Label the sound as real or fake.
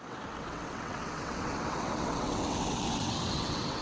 fake